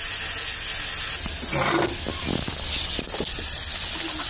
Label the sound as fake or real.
real